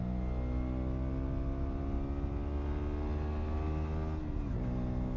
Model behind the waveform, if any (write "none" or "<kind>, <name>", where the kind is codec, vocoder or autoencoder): none